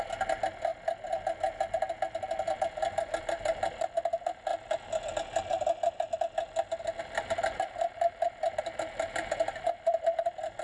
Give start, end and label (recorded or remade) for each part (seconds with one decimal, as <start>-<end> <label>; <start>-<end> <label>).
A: 0.0-0.7 remade; 0.7-3.2 recorded; 3.2-4.5 remade; 4.5-7.0 recorded; 7.0-10.6 remade